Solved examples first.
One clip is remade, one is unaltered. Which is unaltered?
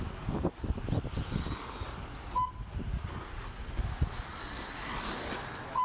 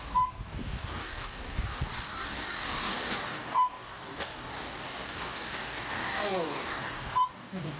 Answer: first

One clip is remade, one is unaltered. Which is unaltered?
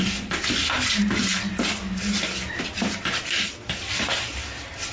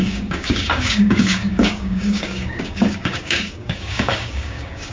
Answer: first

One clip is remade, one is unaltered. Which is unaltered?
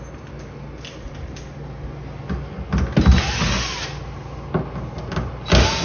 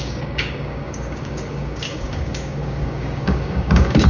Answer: first